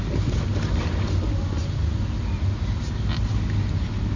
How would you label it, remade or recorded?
recorded